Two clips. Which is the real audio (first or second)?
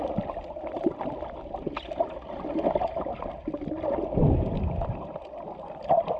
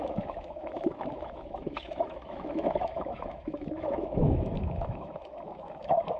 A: first